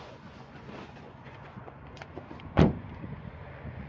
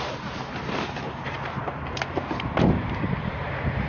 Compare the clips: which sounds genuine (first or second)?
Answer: second